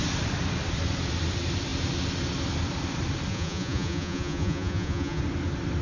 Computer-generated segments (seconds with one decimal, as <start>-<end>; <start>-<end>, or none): 3.3-5.2